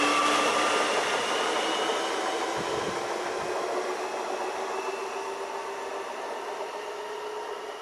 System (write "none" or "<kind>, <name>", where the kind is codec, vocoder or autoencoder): none